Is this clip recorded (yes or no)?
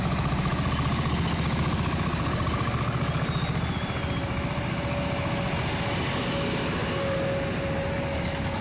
yes